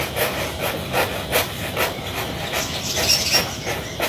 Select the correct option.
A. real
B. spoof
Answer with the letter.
A